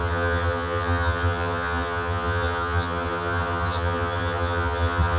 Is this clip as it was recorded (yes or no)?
no